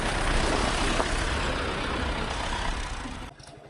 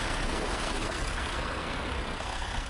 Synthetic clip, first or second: second